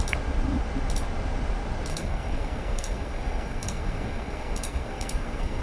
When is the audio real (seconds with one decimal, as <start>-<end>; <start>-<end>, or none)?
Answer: 0.0-1.9